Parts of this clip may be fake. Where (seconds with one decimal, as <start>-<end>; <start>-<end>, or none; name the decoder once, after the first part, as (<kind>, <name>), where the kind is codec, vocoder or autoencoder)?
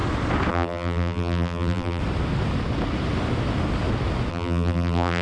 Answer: 0.5-2.0 (vocoder, BigVGAN v2); 4.3-5.2